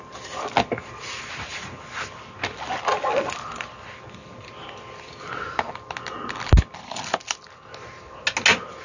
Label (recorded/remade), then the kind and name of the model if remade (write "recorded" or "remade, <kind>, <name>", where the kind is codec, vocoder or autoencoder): recorded